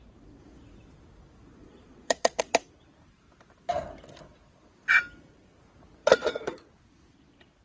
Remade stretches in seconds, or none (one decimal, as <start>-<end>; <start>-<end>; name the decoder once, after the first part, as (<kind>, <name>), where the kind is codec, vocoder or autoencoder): 1.5-2.4 (vocoder, Vocos); 6.0-6.7